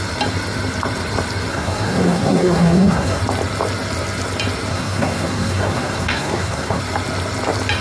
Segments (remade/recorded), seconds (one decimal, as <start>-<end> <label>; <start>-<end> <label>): 0.0-1.5 recorded; 1.5-3.2 remade; 3.2-4.7 recorded; 4.7-6.8 remade; 6.8-7.8 recorded